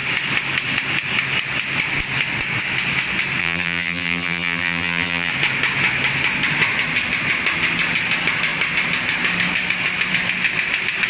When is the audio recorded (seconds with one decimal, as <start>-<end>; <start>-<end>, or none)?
0.0-3.4; 5.3-11.1